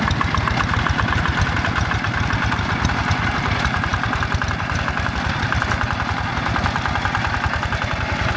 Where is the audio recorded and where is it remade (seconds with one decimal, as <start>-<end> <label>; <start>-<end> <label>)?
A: 0.0-8.4 recorded